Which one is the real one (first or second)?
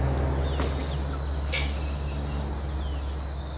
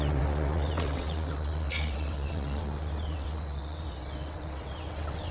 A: first